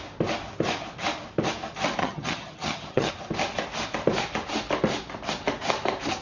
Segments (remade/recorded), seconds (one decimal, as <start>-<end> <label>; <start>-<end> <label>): 0.0-2.0 recorded; 2.0-3.1 remade; 3.1-6.2 recorded